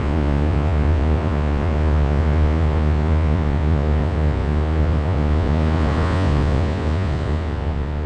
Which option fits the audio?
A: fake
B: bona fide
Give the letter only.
A